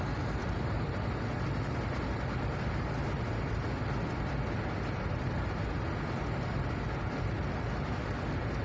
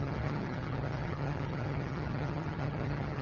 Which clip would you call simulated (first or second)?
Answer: second